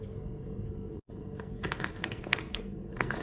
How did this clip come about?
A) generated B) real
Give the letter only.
A